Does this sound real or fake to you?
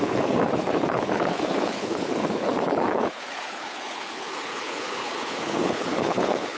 fake